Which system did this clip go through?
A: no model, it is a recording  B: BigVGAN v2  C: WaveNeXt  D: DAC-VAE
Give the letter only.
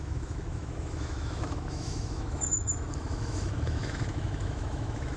D